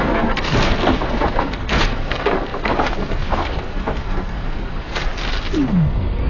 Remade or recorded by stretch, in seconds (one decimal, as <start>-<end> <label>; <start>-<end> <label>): 0.0-5.1 remade; 5.1-5.7 recorded; 5.7-6.3 remade